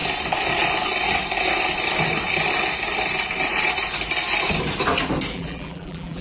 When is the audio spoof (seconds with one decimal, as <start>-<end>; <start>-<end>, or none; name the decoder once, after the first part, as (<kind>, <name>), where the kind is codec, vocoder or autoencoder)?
5.3-6.2 (vocoder, BigVGAN v2)